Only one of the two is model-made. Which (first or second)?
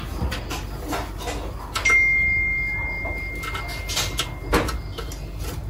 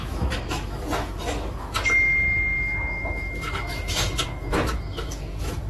second